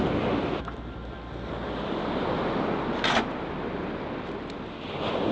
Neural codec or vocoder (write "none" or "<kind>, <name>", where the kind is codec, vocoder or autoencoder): none